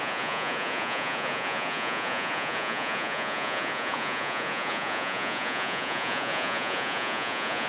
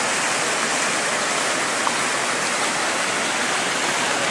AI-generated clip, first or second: first